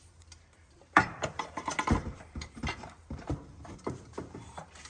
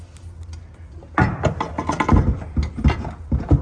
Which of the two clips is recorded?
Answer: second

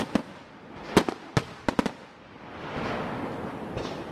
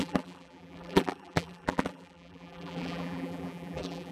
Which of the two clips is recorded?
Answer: first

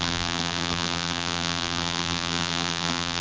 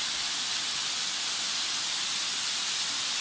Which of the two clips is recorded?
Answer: second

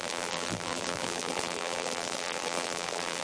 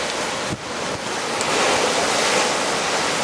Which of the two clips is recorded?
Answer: second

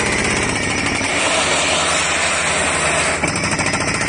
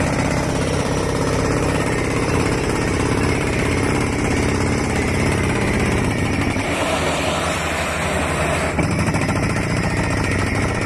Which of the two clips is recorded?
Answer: first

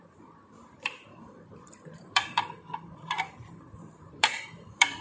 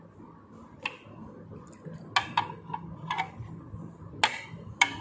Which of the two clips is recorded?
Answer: second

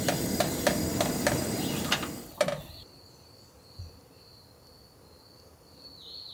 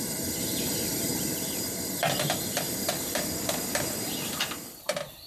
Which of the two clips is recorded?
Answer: first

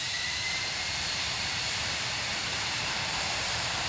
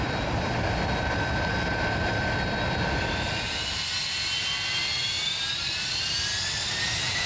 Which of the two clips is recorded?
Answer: second